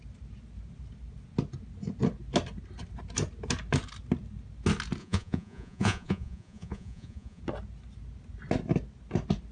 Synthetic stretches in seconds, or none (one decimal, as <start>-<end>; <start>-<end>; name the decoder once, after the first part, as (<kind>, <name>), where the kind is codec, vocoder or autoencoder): 5.0-7.4 (vocoder, Vocos)